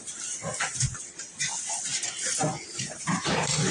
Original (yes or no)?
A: yes